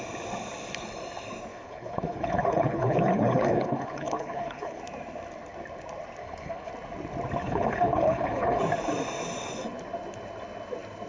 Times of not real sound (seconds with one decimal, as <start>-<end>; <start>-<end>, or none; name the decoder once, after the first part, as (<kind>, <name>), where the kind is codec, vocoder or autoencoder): 1.5-4.8 (codec, HILCodec); 6.2-6.7; 7.4-8.6